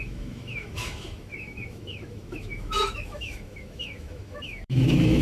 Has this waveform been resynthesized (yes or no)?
yes